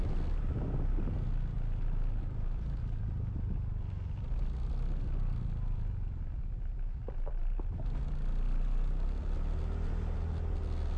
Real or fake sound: real